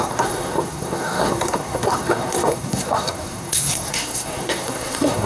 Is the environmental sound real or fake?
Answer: fake